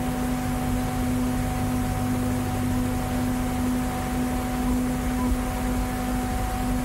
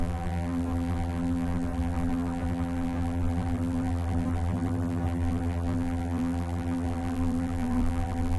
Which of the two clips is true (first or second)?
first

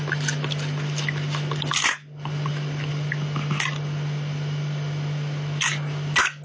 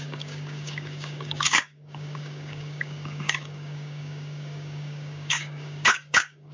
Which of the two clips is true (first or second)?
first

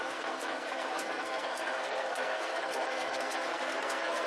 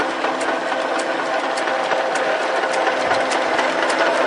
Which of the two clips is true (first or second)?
second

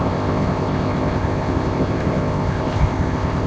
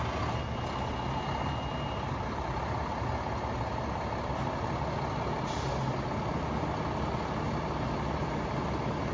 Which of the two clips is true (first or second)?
second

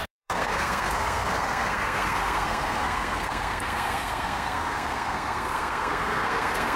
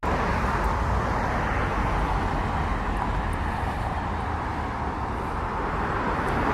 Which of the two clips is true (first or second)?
second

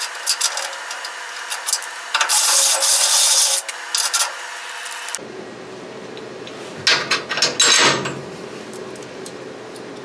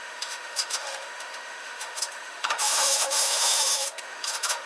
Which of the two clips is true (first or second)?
first